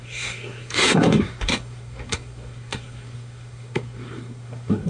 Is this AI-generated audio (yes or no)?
yes